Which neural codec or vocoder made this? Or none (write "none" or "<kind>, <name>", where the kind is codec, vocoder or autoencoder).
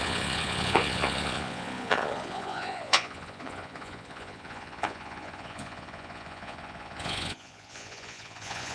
vocoder, Vocos